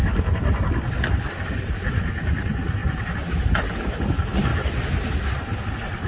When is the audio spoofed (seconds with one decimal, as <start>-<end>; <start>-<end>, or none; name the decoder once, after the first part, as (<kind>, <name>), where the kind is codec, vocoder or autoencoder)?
2.8-3.7 (vocoder, BigVGAN v2); 4.5-5.2